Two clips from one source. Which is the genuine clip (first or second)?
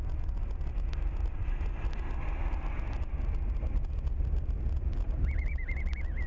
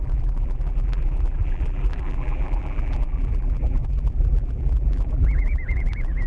first